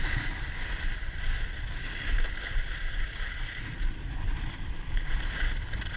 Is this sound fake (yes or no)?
no